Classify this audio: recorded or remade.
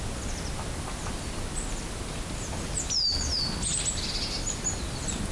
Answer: recorded